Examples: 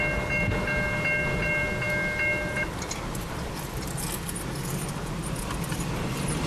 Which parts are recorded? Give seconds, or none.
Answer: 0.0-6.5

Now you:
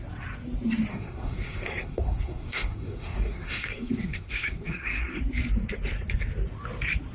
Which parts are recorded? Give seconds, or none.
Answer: 0.0-0.9; 5.2-7.1

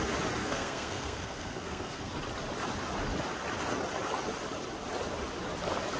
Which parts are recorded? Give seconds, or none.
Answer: 0.0-0.4; 2.1-6.0

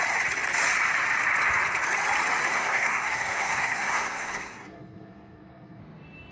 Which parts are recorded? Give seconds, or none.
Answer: 0.0-2.5; 5.8-6.3

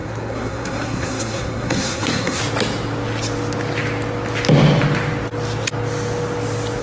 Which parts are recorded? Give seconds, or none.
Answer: 2.4-6.8

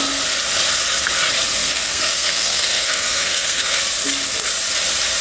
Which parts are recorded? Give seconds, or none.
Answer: 0.0-1.6; 3.8-5.2